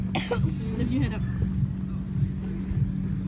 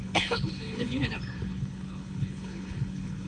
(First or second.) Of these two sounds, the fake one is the second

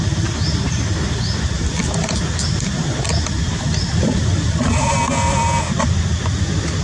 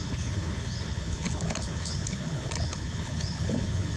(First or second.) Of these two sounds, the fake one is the second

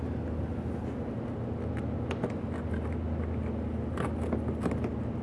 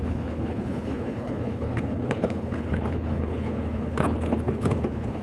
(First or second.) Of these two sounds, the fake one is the second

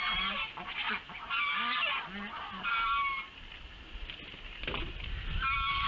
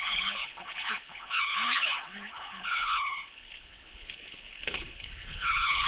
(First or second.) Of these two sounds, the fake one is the second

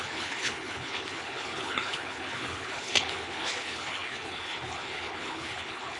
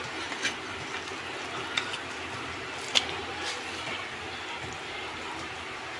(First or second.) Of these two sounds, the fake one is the first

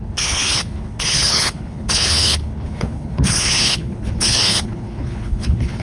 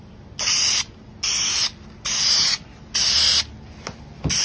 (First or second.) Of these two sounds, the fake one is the first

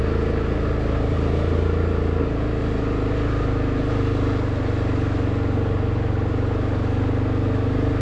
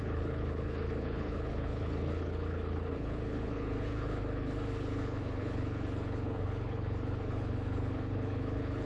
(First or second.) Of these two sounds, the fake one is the second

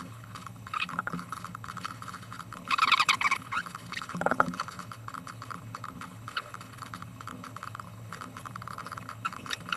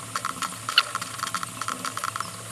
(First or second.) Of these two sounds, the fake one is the first